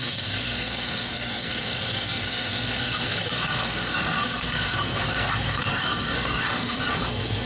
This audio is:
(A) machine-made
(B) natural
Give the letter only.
A